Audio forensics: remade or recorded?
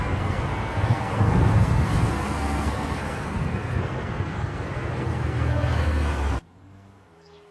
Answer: remade